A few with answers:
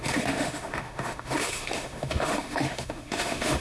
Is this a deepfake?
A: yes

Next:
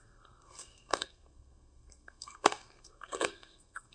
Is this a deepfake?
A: yes